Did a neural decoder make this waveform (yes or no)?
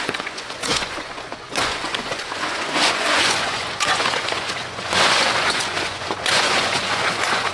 yes